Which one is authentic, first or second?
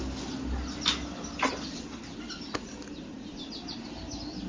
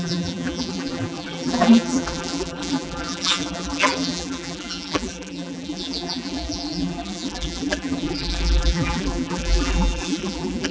first